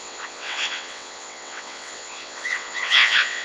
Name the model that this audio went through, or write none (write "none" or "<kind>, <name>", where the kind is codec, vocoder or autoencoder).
vocoder, WaveNeXt